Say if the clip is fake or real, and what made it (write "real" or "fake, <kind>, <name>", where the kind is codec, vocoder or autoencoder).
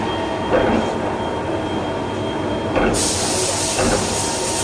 real